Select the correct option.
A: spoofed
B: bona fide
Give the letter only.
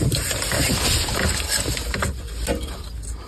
B